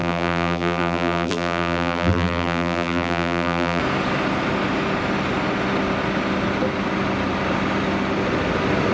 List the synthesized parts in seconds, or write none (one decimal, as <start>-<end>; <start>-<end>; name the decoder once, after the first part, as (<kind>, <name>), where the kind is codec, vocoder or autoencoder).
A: 0.0-3.8 (vocoder, BigVGAN v2)